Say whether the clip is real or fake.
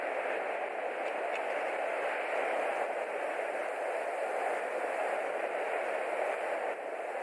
real